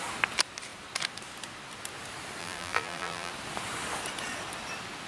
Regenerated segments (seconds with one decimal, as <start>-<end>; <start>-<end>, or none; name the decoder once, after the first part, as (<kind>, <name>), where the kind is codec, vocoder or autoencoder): 2.4-3.3 (vocoder, BigVGAN v2)